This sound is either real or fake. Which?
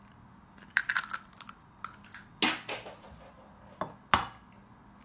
real